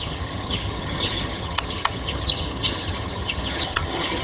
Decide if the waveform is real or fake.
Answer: fake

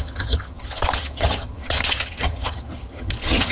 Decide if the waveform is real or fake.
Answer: fake